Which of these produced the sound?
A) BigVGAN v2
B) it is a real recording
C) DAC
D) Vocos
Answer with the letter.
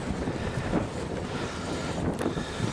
A